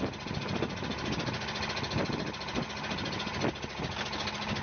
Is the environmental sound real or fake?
real